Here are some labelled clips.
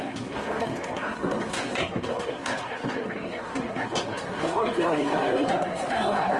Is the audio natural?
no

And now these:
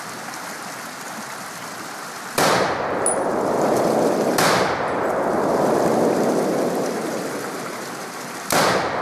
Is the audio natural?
yes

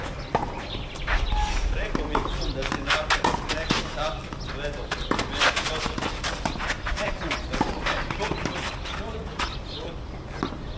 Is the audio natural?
yes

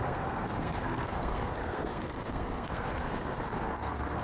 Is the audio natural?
no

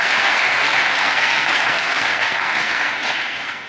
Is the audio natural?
no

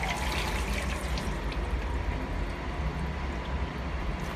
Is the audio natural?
yes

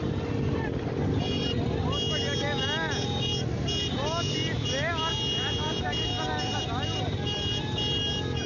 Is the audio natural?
yes